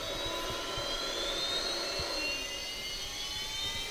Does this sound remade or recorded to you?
recorded